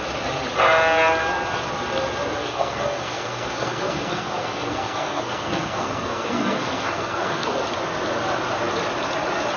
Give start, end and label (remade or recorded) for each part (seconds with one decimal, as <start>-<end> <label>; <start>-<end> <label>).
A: 0.0-2.4 recorded; 2.4-7.5 remade; 7.5-9.6 recorded